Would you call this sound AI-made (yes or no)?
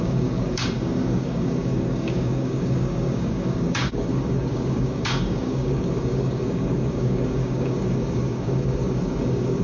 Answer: yes